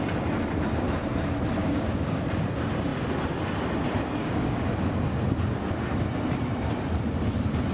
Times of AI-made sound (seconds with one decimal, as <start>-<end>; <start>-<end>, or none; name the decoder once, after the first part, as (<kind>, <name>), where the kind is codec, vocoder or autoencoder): 1.6-2.2 (codec, DAC); 4.2-4.7